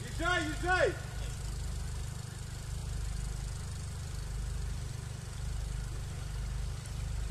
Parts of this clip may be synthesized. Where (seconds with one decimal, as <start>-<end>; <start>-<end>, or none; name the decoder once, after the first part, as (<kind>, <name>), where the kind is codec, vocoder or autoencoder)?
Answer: none